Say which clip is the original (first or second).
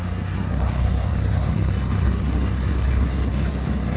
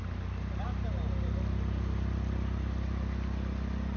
second